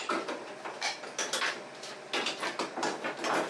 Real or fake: real